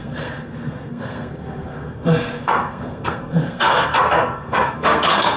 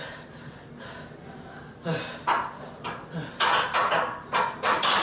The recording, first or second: second